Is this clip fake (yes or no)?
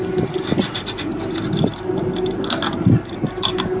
no